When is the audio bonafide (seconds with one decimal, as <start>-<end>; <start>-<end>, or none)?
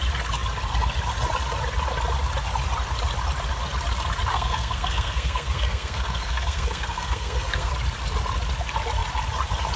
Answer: 0.0-4.3; 7.7-9.8